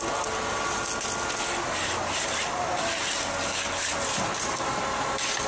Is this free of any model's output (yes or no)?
yes